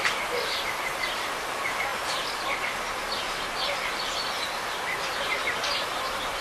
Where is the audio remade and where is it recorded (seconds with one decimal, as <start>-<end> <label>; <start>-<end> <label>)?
0.0-6.4 recorded